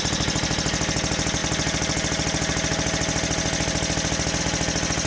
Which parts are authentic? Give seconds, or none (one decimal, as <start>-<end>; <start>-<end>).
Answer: 0.0-5.1